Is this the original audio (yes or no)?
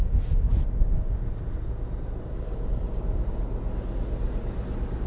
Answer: yes